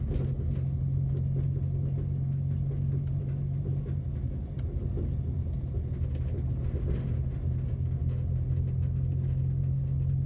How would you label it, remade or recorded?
recorded